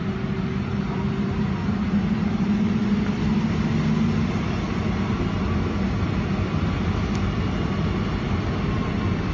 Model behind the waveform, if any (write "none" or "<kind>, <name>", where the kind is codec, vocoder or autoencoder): none